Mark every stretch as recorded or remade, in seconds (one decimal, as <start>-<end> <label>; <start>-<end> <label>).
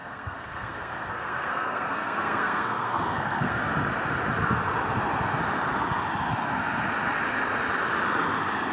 0.0-3.6 remade; 3.6-8.7 recorded